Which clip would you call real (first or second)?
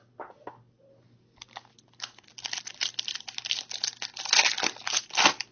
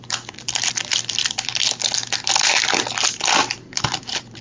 first